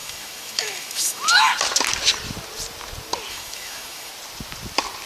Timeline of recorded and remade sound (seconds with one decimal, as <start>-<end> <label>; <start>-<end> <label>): 0.0-1.5 remade; 1.5-3.3 recorded; 3.3-4.1 remade; 4.1-5.1 recorded